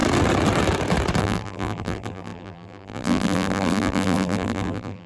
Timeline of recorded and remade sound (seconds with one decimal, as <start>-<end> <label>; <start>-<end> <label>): 0.0-1.2 recorded; 1.2-5.1 remade